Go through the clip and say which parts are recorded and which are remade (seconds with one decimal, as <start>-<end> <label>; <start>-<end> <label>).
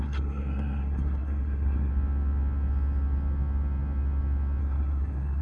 0.0-1.9 remade; 1.9-4.6 recorded; 4.6-5.4 remade